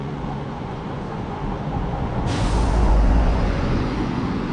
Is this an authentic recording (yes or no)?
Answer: no